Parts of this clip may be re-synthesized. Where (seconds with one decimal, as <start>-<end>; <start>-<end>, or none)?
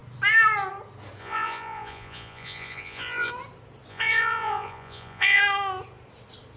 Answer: 1.2-3.3; 3.9-5.4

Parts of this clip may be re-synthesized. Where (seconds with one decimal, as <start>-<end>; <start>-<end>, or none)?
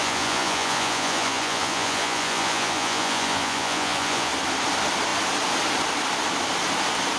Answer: 0.0-4.3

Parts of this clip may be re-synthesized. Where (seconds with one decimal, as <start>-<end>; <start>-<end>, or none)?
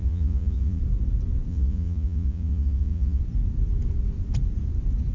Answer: 0.0-0.8; 1.5-3.2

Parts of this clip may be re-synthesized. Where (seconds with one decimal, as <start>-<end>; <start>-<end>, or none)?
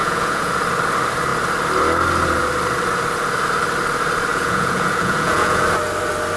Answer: 0.0-0.5; 4.3-5.6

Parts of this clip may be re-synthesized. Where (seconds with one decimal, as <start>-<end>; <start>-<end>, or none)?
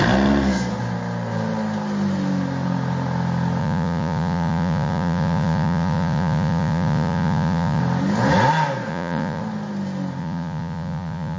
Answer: 3.6-7.8; 8.9-9.4; 10.2-11.4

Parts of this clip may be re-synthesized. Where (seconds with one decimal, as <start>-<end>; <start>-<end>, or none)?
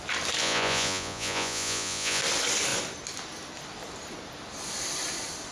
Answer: 0.4-2.2